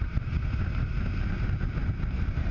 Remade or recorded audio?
recorded